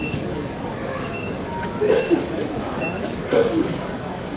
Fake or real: fake